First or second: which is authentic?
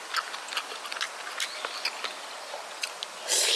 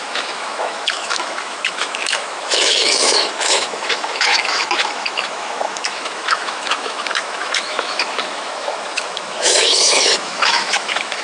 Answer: first